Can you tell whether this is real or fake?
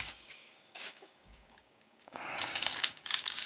fake